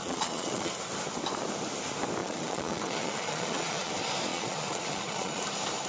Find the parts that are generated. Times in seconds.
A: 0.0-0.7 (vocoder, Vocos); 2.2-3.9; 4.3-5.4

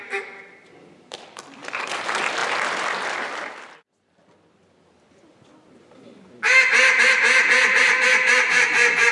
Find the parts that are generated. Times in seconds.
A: 0.0-2.4 (vocoder, BigVGAN v2); 7.0-9.1

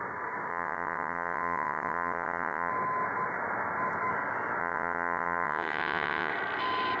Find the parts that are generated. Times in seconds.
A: 0.5-2.7 (vocoder, WaveNeXt); 4.6-6.3

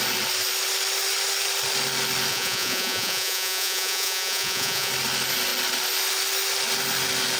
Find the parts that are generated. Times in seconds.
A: 2.3-4.9 (vocoder, Vocos)

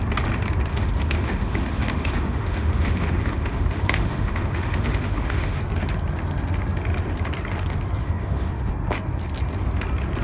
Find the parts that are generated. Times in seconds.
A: 0.7-5.6 (autoencoder, DAC-VAE); 8.0-8.7

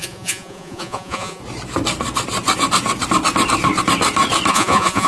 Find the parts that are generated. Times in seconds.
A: 0.0-1.4 (vocoder, Vocos); 4.5-5.1